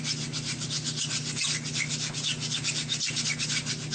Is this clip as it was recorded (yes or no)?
yes